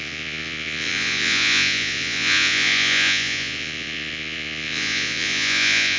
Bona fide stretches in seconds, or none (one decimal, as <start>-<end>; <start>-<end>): none